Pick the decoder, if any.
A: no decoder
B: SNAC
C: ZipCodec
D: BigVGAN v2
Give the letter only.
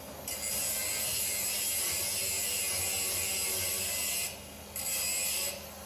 A